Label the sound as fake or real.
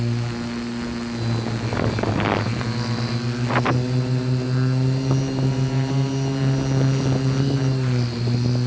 real